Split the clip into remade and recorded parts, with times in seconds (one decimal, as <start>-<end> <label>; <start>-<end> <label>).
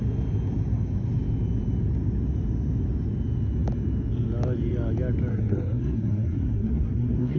0.0-5.3 recorded; 5.3-7.4 remade